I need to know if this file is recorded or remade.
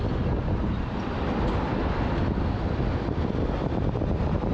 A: recorded